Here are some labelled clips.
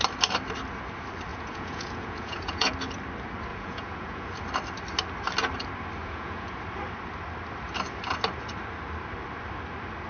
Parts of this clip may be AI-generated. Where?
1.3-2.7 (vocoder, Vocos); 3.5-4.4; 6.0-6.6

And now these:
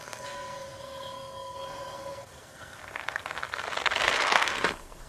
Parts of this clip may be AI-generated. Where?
0.0-5.1 (codec, SNAC)

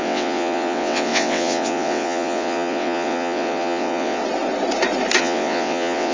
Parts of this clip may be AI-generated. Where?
0.0-4.2 (vocoder, WaveNeXt); 5.2-6.1

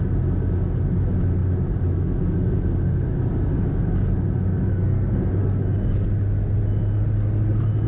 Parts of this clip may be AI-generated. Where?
4.7-5.3 (codec, SNAC)